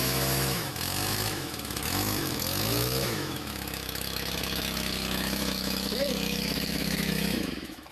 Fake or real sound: fake